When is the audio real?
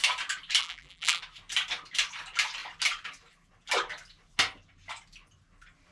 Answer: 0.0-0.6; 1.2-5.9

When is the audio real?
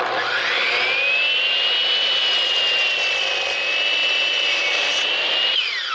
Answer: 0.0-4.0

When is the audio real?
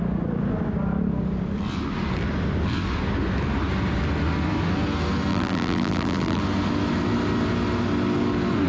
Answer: 0.0-5.3; 6.4-8.7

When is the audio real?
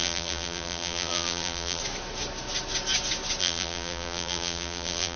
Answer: 1.8-3.4